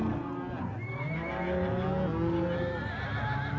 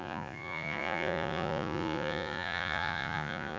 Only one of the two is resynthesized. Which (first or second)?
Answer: second